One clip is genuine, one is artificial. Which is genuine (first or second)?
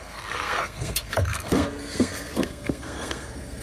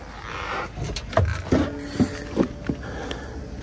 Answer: second